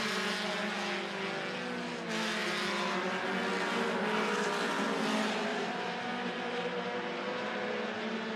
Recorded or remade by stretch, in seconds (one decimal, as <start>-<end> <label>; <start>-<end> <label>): 0.0-5.5 recorded; 5.5-6.4 remade; 6.4-8.4 recorded